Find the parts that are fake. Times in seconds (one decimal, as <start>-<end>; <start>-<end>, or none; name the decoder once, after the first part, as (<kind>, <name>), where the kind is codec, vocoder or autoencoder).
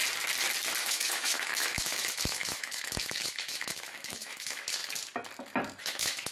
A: 0.8-4.8 (autoencoder, DAC-VAE); 5.8-6.3